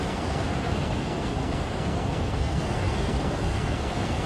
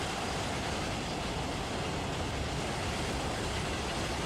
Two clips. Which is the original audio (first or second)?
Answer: second